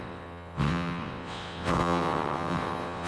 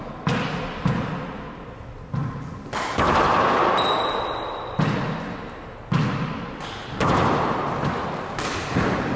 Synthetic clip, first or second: first